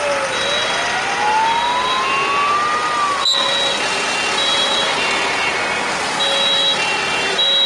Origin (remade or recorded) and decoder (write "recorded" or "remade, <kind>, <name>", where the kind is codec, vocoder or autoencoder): recorded